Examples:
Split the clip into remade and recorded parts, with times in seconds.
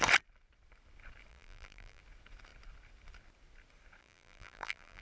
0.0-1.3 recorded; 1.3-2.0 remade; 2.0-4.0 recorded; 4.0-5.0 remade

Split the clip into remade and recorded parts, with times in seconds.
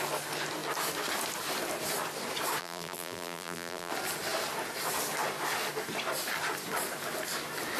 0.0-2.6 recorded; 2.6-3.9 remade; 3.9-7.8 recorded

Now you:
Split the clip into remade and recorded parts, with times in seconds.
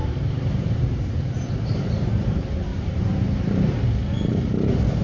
0.0-2.1 remade; 2.1-2.7 recorded; 2.7-3.4 remade; 3.4-5.0 recorded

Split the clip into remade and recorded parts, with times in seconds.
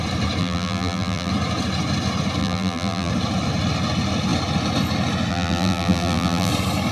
0.0-0.4 recorded; 0.4-1.3 remade; 1.3-2.4 recorded; 2.4-3.1 remade; 3.1-5.3 recorded; 5.3-6.5 remade; 6.5-6.9 recorded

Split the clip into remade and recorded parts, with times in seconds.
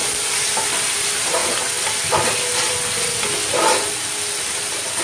0.0-0.7 recorded; 0.7-1.4 remade; 1.4-4.4 recorded; 4.4-5.0 remade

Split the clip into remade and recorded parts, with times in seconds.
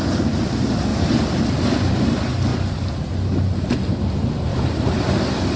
0.0-0.9 recorded; 0.9-1.4 remade; 1.4-4.5 recorded; 4.5-5.0 remade; 5.0-5.6 recorded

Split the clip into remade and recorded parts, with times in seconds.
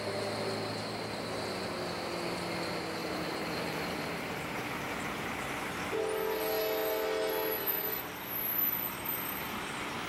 0.0-3.0 recorded; 3.0-5.3 remade; 5.3-10.1 recorded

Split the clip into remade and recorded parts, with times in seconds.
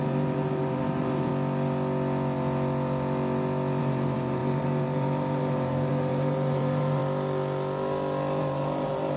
0.0-1.3 remade; 1.3-3.8 recorded; 3.8-7.0 remade; 7.0-8.4 recorded; 8.4-9.2 remade